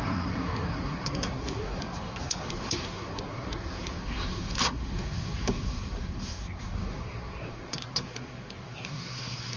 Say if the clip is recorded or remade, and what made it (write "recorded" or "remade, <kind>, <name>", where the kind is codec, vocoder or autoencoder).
remade, codec, SNAC